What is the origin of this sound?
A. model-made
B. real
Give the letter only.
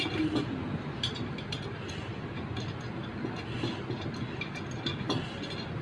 B